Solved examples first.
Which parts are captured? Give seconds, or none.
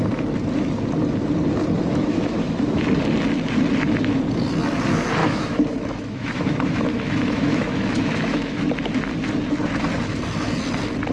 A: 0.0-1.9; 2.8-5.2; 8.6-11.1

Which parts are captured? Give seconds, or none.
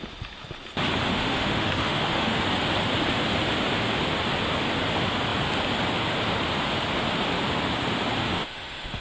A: 0.0-1.1; 2.4-8.2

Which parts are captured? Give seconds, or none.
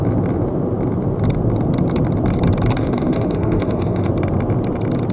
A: 0.0-2.8; 4.1-5.1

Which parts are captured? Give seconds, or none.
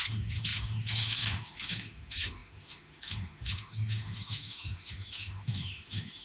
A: none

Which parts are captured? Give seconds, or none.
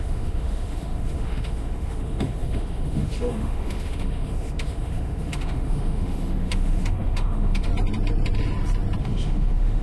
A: 7.7-9.0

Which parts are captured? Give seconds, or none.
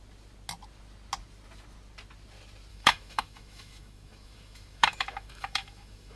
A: 0.0-2.7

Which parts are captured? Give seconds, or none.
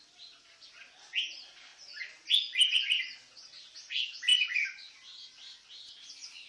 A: 0.0-6.5